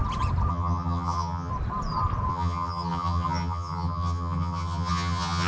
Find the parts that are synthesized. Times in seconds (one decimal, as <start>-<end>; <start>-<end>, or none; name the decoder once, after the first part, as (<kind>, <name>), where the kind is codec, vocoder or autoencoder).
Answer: 0.5-1.5 (vocoder, HiFi-GAN); 2.3-5.5

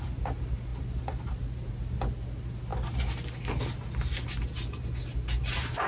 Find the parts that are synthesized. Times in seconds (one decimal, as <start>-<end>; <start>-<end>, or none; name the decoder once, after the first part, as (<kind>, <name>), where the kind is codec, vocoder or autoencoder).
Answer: none